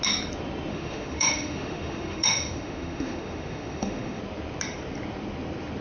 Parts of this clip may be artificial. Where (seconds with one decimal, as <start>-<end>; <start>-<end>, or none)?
0.7-4.2

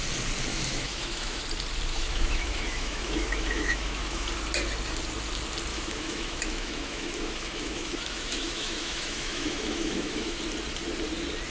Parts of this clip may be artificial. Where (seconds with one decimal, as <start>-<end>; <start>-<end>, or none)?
0.5-1.4; 1.9-4.3; 5.7-10.4

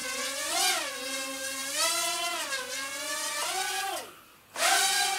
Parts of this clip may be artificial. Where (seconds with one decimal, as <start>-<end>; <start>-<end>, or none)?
none

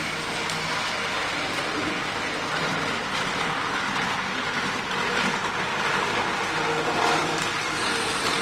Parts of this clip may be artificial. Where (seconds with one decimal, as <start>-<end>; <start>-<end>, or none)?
1.2-3.9

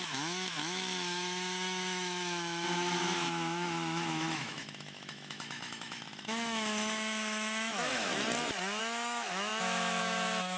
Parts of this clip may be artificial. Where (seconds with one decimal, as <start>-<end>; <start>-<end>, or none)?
0.0-8.1; 8.8-10.6

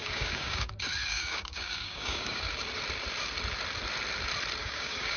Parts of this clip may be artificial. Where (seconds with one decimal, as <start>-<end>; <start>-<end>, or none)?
0.0-0.7; 1.1-2.4; 4.6-5.2

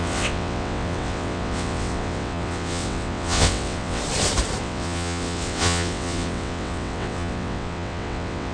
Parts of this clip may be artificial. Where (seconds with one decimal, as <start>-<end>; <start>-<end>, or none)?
0.0-4.0; 4.6-8.5

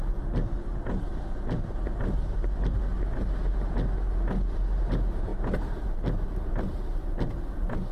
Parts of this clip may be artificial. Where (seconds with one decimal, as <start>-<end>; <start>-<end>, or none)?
0.6-2.8; 5.3-6.0